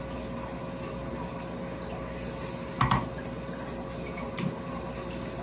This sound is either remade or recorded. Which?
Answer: recorded